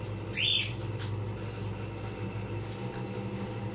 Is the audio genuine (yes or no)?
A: yes